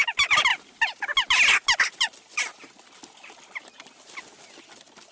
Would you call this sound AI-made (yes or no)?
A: no